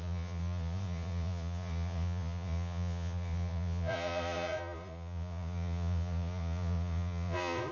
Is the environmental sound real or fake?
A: fake